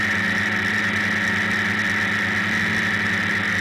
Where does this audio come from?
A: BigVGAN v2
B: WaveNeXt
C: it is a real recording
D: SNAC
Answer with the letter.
C